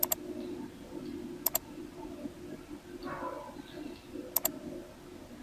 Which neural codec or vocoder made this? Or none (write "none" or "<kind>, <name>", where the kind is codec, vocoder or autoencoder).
none